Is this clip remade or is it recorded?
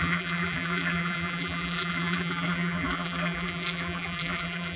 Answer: remade